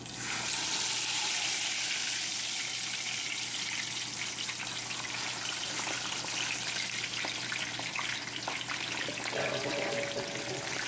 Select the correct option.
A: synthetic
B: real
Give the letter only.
B